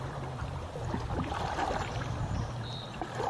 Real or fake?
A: fake